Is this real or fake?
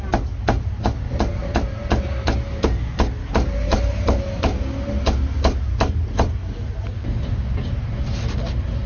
real